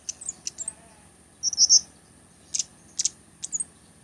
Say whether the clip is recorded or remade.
recorded